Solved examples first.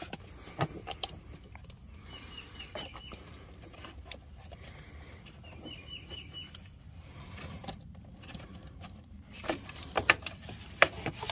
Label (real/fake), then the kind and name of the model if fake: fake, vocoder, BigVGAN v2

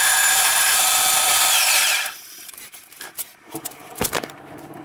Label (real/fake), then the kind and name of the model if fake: fake, vocoder, BigVGAN v2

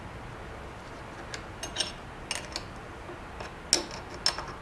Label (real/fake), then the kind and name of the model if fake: real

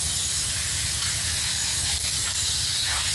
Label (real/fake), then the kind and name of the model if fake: real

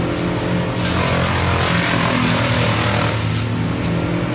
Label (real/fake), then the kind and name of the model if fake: real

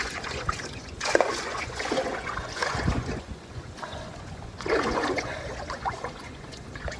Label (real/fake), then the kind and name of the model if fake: fake, vocoder, Vocos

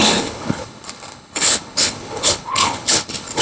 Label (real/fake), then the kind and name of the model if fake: fake, codec, HILCodec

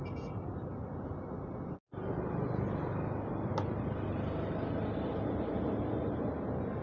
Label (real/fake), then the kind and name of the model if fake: real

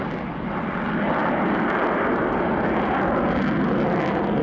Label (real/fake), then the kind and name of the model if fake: real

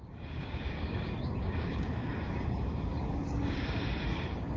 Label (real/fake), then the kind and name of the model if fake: fake, codec, DAC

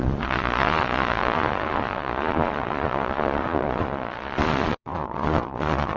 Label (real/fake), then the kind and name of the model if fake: fake, vocoder, Vocos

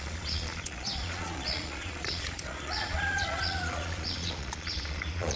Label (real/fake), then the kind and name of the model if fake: fake, vocoder, Vocos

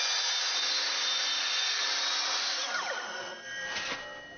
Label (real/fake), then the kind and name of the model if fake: real